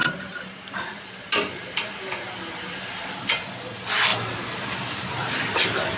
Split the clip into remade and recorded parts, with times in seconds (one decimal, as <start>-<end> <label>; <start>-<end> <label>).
0.0-2.0 remade; 2.0-4.1 recorded; 4.1-6.0 remade